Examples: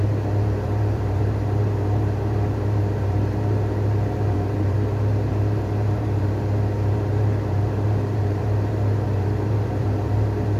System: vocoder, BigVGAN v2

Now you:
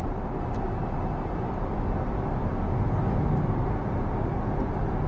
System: none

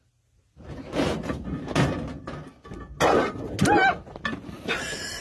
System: none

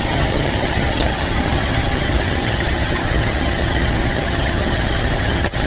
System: vocoder, HiFi-GAN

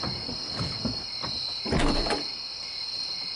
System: none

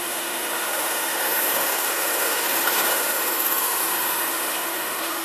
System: autoencoder, DAC-VAE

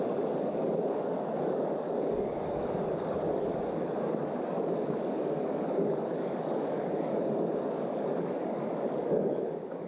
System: codec, DAC